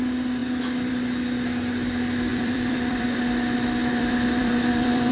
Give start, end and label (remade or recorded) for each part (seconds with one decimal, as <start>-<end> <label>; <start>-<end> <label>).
0.0-2.3 recorded; 2.3-3.2 remade; 3.2-3.8 recorded; 3.8-5.1 remade